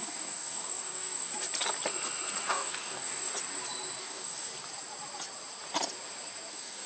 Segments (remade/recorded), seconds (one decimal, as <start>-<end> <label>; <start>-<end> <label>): 0.0-1.3 remade; 1.3-2.5 recorded; 2.5-3.3 remade; 3.3-4.0 recorded; 4.0-4.5 remade; 4.5-6.5 recorded; 6.5-6.9 remade